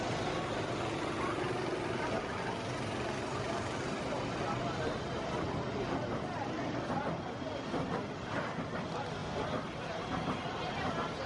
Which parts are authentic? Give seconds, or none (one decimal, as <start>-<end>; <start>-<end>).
0.0-11.3